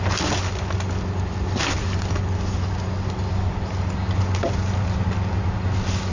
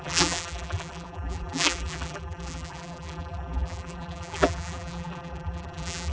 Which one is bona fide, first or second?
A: first